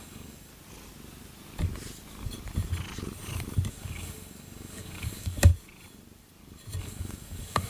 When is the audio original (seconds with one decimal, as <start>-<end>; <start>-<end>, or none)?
0.5-3.7; 5.5-6.8